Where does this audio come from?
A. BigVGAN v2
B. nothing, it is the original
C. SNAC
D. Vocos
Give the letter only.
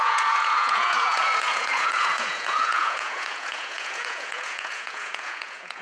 D